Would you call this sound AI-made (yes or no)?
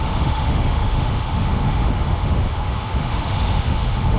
yes